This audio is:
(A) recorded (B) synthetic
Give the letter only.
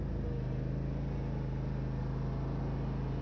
A